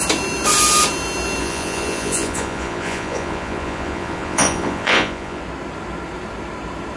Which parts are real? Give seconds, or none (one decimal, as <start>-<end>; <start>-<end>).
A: 0.0-1.4; 5.4-7.0